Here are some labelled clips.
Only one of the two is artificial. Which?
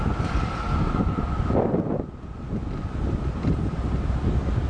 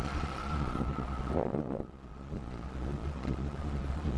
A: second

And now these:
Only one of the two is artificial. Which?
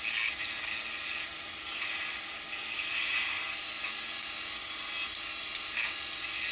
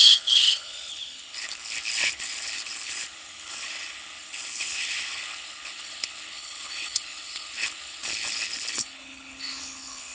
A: second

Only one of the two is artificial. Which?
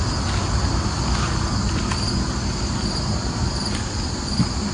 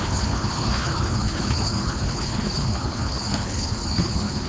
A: second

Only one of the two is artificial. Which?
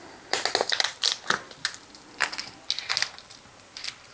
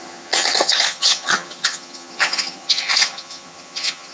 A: second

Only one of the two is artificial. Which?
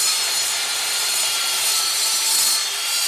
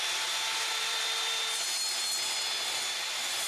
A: first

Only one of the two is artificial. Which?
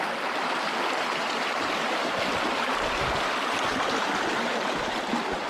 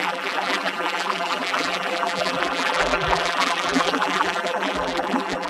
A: second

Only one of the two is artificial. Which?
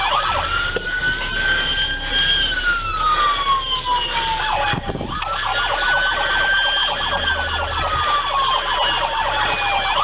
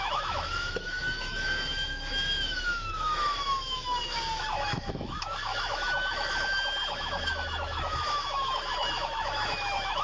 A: second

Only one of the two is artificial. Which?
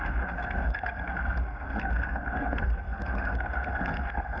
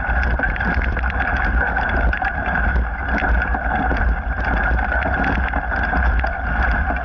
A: first